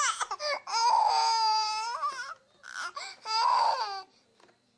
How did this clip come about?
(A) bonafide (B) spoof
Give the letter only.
A